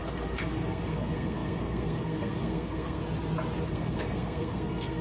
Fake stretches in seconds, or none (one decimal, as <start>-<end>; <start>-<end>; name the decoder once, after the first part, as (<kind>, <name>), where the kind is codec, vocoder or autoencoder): 0.0-3.0 (codec, SNAC); 3.7-5.0